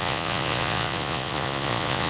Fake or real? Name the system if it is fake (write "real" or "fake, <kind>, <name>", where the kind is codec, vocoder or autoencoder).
fake, vocoder, Vocos